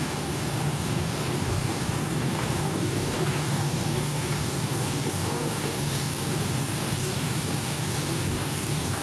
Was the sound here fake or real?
fake